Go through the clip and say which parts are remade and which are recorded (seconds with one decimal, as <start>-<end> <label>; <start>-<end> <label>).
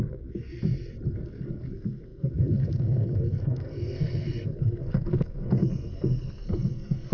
0.0-0.6 remade; 0.6-1.1 recorded; 1.1-7.1 remade